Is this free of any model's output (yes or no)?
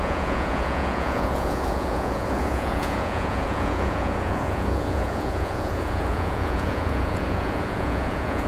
no